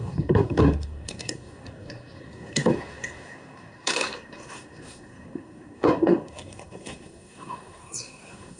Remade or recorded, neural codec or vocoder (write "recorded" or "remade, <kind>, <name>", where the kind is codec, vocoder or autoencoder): remade, codec, SNAC